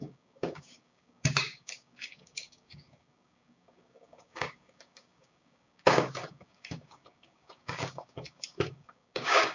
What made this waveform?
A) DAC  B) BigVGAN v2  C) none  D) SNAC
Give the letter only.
A